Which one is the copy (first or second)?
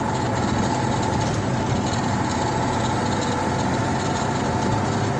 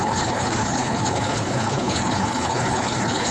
second